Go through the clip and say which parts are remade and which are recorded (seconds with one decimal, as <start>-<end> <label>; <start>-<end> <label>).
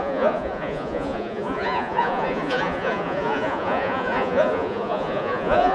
0.0-5.7 remade